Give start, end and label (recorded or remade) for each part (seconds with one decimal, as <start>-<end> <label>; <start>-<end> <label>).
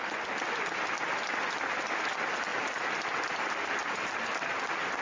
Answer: 0.0-5.0 recorded